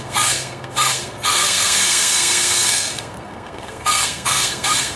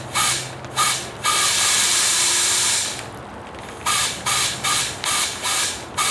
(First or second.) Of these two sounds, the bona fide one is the second